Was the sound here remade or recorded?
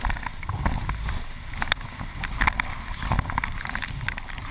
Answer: recorded